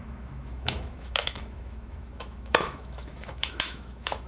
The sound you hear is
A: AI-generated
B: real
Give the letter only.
A